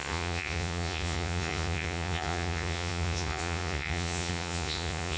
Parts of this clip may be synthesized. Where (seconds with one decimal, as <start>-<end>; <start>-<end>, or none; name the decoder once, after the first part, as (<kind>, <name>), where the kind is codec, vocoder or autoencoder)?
0.0-5.2 (vocoder, Vocos)